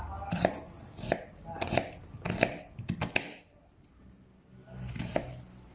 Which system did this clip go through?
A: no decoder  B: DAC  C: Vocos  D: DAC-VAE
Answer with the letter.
A